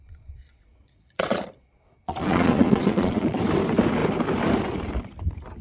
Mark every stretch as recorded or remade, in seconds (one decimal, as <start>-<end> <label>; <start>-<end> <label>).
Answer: 0.0-3.4 remade; 3.4-5.6 recorded